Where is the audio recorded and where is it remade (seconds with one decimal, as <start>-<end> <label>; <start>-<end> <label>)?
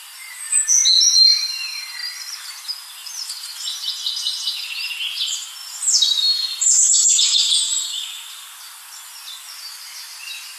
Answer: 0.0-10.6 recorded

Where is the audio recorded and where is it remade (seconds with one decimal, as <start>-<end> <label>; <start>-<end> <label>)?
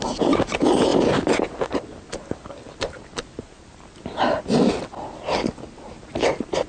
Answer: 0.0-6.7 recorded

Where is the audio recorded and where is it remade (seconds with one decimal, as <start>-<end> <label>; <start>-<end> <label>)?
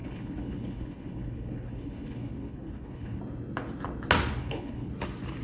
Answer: 0.0-3.2 remade; 3.2-4.4 recorded; 4.4-4.9 remade; 4.9-5.4 recorded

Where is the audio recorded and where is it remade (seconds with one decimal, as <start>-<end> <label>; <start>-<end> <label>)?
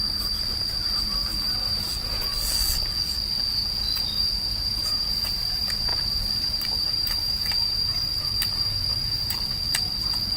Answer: 0.0-2.3 remade; 2.3-4.2 recorded; 4.2-10.4 remade